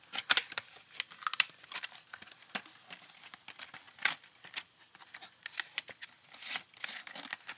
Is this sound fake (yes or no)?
no